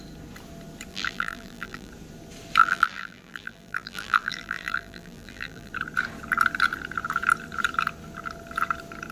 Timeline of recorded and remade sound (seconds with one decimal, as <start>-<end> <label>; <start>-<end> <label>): 0.0-0.9 recorded; 0.9-1.9 remade; 1.9-2.6 recorded; 2.6-5.7 remade; 5.7-9.1 recorded